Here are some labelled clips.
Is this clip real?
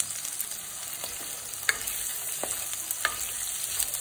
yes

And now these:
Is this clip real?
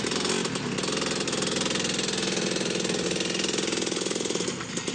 yes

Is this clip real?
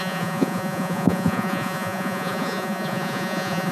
no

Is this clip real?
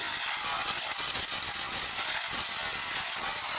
yes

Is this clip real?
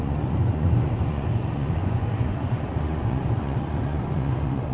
no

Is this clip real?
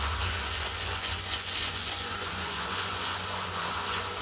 no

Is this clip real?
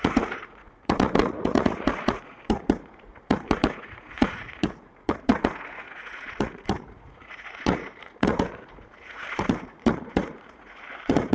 no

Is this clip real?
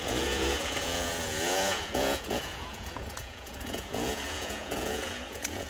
no